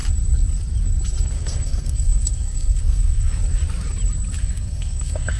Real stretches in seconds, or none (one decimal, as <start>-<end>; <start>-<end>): 0.0-1.3; 3.4-4.4